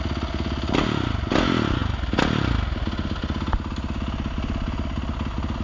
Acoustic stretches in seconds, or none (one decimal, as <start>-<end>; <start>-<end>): 0.0-5.6